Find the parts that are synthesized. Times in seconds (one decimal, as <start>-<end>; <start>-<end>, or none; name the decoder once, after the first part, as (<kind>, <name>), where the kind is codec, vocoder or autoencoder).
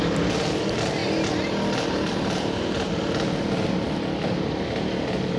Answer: 0.0-5.4 (vocoder, BigVGAN v2)